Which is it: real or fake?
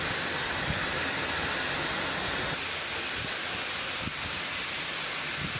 real